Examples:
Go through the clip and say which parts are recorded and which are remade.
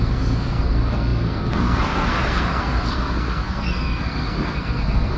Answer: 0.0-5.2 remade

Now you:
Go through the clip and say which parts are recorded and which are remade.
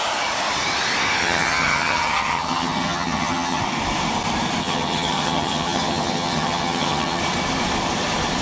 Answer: 0.0-1.2 recorded; 1.2-3.6 remade; 3.6-4.6 recorded; 4.6-7.2 remade; 7.2-8.4 recorded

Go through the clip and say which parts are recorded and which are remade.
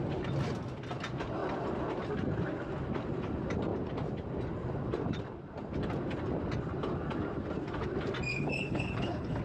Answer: 0.0-8.3 recorded; 8.3-9.4 remade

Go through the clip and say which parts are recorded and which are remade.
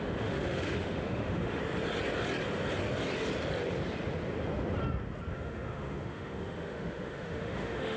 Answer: 0.0-1.6 remade; 1.6-5.3 recorded; 5.3-8.0 remade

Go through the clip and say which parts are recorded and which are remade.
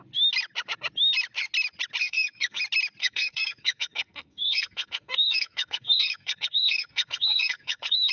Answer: 0.0-2.0 recorded; 2.0-2.6 remade; 2.6-3.0 recorded; 3.0-8.1 remade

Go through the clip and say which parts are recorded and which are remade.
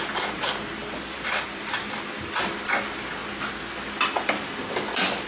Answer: 0.0-0.8 recorded; 0.8-2.1 remade; 2.1-5.3 recorded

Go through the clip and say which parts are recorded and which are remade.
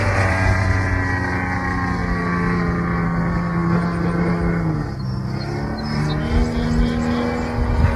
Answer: 0.0-0.9 remade; 0.9-8.0 recorded